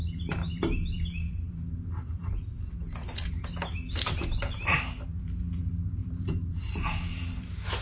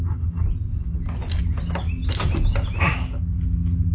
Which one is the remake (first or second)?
first